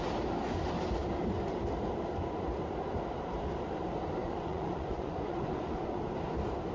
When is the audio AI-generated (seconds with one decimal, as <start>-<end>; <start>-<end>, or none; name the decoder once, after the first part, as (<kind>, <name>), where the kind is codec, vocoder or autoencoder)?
4.2-6.0 (vocoder, Vocos)